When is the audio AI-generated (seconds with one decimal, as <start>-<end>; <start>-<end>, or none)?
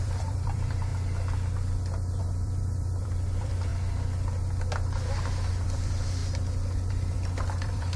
0.0-0.9; 2.2-3.7; 5.5-6.2; 6.9-8.0